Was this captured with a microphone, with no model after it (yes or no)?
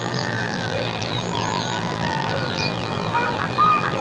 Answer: no